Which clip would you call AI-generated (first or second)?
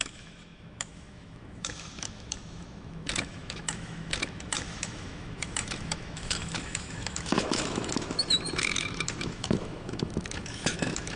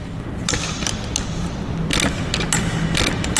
first